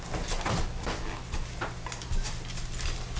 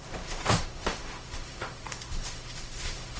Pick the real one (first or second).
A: first